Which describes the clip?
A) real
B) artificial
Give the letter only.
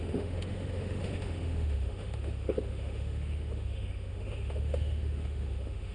B